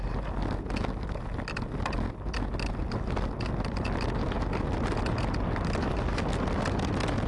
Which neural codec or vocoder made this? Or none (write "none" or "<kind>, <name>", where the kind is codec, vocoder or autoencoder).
none